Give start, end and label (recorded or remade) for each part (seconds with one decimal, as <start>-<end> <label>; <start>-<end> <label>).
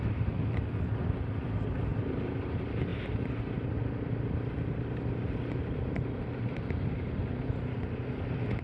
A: 0.0-1.9 recorded; 1.9-2.5 remade; 2.5-8.6 recorded